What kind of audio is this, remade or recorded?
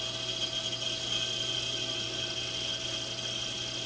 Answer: recorded